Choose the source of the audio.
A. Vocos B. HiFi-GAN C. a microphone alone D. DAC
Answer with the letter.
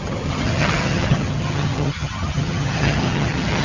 B